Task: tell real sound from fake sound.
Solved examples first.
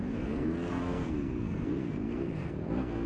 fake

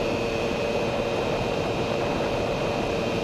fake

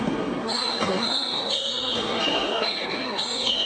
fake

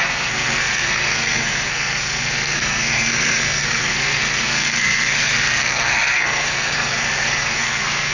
fake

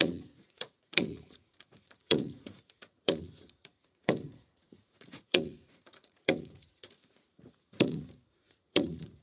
fake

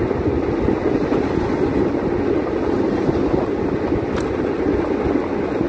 real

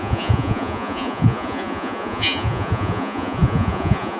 fake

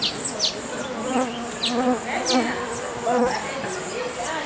real